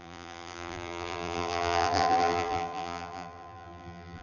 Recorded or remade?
remade